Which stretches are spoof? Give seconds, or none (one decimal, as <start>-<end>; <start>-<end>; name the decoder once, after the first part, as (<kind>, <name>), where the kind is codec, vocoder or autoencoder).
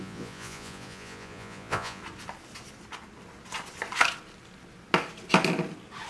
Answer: 0.0-2.0 (vocoder, Vocos)